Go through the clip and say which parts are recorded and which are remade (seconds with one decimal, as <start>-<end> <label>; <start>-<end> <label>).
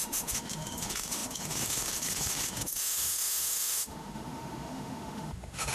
0.0-5.7 remade